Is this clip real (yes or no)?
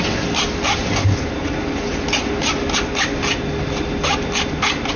yes